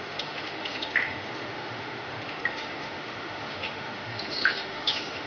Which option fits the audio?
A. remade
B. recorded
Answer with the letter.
A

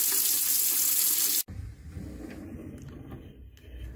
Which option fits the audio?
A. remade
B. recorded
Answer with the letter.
B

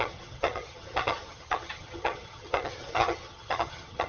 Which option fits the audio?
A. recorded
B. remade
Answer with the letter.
B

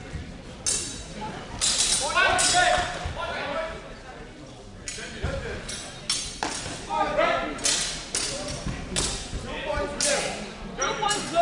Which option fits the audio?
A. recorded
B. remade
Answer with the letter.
A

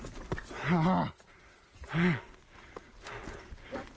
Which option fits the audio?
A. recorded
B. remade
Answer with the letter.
A